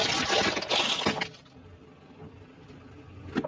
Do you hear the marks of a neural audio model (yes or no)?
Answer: no